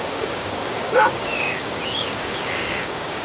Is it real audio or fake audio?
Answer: fake